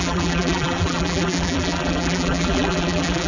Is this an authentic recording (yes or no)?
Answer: no